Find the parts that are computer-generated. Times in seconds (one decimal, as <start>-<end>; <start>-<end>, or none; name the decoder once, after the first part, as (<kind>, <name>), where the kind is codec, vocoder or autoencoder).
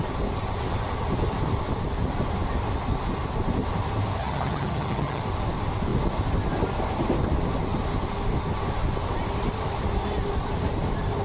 4.2-5.2 (vocoder, HiFi-GAN)